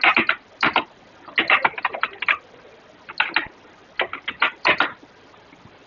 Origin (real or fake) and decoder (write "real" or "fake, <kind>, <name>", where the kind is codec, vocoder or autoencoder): real